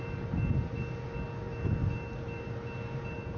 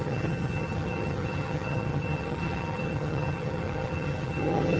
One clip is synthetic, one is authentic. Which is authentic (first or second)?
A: first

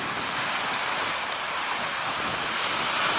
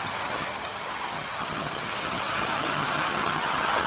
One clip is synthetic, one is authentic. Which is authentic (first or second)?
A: first